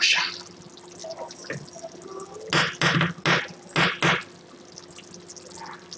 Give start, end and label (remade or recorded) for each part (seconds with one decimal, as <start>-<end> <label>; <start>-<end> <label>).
0.0-6.0 recorded